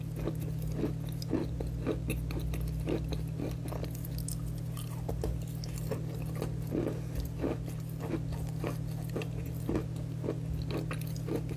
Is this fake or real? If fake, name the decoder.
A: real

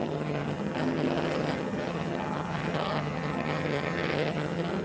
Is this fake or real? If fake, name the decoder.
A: fake, vocoder, HiFi-GAN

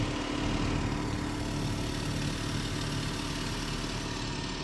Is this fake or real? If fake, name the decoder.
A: real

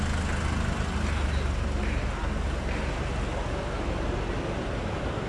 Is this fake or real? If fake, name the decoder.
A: real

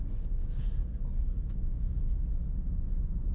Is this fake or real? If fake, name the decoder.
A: real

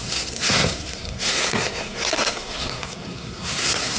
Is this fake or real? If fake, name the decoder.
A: fake, codec, SNAC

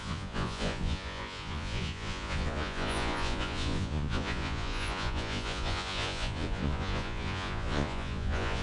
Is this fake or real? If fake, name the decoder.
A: fake, vocoder, Vocos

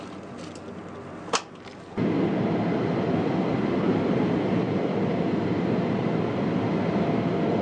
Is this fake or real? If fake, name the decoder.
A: real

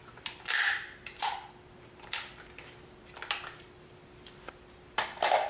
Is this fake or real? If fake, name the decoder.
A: fake, vocoder, BigVGAN v2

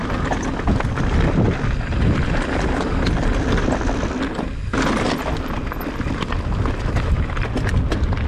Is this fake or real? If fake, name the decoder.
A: real